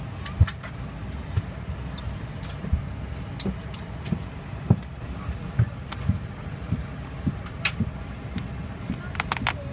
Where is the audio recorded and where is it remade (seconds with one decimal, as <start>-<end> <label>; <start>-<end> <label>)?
0.0-9.7 recorded